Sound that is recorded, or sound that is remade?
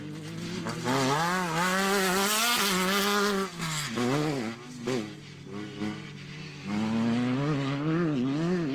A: recorded